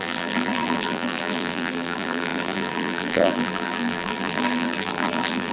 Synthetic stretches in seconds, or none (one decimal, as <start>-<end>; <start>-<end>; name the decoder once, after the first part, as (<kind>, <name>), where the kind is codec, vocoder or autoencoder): 0.0-5.5 (vocoder, BigVGAN v2)